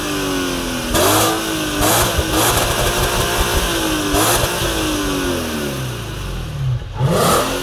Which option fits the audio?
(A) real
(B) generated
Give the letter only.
A